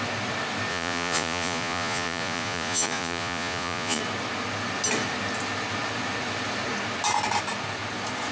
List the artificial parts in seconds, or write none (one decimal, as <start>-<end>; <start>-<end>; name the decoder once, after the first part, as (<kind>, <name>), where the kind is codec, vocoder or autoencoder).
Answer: 0.7-4.0 (vocoder, Vocos)